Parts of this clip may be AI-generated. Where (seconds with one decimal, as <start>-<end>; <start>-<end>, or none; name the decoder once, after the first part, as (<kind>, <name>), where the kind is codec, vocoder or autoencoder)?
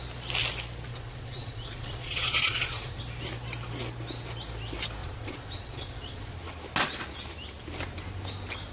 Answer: 0.9-3.0 (vocoder, Vocos); 5.0-6.3